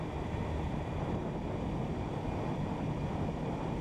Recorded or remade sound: recorded